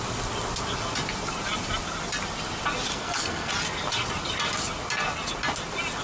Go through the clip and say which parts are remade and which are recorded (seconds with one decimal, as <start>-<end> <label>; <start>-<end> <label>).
0.0-2.9 recorded; 2.9-3.5 remade; 3.5-6.0 recorded